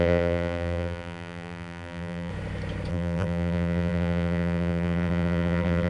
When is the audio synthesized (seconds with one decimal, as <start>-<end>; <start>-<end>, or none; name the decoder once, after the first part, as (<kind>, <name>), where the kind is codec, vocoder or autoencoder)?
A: 0.0-2.3 (vocoder, BigVGAN v2); 2.9-5.9